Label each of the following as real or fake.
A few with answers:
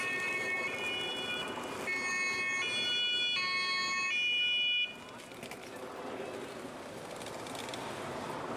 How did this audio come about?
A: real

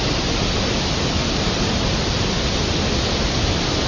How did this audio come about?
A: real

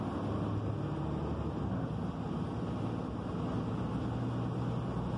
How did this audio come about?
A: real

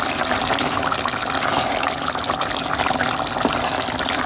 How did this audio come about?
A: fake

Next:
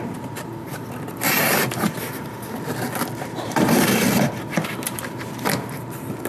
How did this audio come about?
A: fake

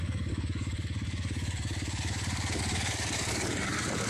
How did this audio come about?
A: fake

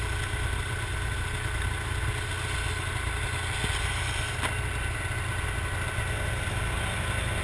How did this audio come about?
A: real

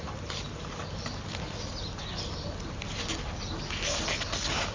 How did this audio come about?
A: real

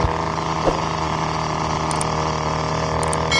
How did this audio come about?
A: real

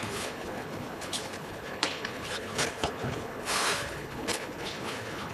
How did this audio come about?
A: fake